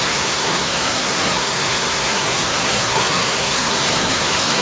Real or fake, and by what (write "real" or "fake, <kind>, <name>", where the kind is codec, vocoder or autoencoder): fake, codec, SNAC